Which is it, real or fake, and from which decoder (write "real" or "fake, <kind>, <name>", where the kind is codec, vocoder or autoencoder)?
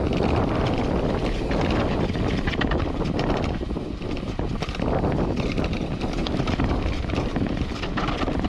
real